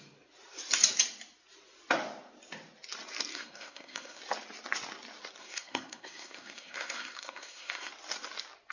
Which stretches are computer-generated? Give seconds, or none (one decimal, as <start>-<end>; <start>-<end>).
3.3-4.2; 5.4-7.9